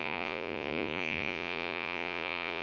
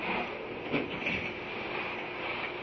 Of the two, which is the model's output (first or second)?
first